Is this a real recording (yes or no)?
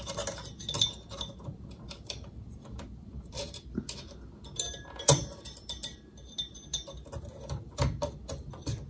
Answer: yes